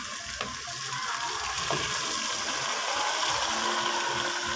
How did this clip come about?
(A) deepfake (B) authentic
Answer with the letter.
B